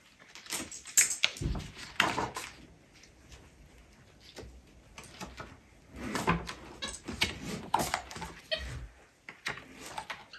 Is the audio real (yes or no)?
yes